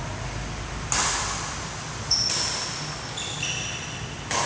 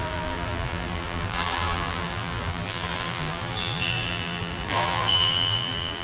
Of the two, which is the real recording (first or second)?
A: first